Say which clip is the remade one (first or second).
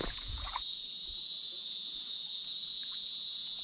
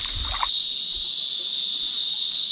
first